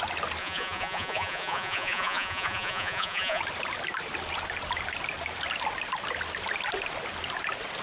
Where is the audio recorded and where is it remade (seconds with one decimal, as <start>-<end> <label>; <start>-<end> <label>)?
0.0-0.4 recorded; 0.4-3.4 remade; 3.4-7.8 recorded